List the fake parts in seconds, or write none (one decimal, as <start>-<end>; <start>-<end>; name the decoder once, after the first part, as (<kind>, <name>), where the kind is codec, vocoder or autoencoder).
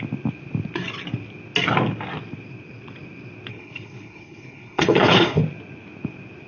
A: 3.5-5.4 (codec, HILCodec)